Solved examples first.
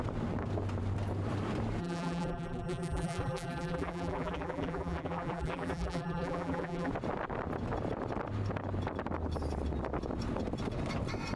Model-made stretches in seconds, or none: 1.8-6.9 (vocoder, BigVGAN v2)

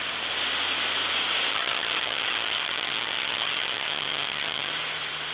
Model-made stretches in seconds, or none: 1.5-4.7 (vocoder, HiFi-GAN)

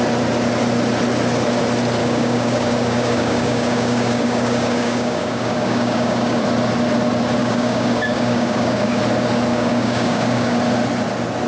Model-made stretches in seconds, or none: 2.0-6.4 (codec, DAC); 7.4-9.0; 9.5-10.6

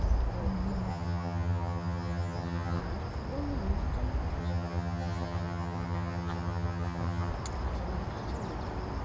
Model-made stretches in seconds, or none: 0.9-2.8 (vocoder, HiFi-GAN); 4.4-7.3

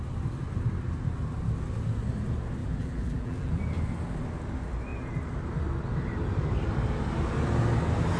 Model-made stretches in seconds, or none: 2.6-3.6 (vocoder, BigVGAN v2)